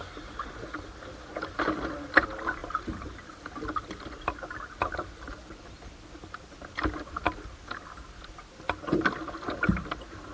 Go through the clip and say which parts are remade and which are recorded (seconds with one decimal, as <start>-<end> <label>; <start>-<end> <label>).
0.0-2.6 recorded; 2.6-3.3 remade; 3.3-10.3 recorded